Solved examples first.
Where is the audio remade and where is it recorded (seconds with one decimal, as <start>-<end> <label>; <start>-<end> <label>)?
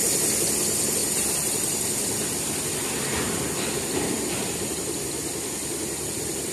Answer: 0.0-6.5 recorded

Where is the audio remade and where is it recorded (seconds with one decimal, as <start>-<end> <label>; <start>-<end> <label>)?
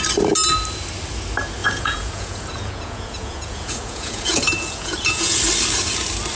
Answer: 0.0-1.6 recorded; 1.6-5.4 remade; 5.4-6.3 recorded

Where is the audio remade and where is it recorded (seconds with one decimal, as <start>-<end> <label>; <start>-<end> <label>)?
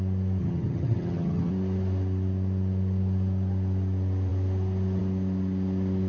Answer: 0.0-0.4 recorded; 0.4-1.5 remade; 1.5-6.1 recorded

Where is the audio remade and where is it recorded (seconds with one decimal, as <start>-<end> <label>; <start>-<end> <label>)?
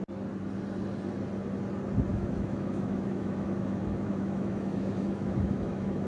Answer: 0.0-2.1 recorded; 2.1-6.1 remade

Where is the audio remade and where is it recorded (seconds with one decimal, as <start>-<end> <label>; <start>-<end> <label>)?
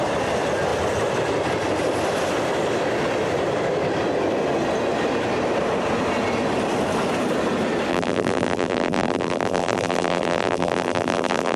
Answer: 0.0-7.9 recorded; 7.9-11.6 remade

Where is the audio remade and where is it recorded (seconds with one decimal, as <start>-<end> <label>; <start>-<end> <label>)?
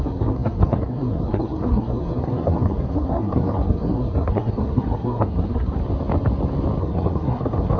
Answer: 0.0-5.8 remade; 5.8-6.8 recorded; 6.8-7.8 remade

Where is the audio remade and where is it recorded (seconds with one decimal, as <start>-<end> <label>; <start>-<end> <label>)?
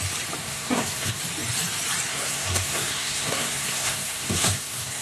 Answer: 0.0-0.4 recorded; 0.4-1.2 remade; 1.2-2.1 recorded; 2.1-5.0 remade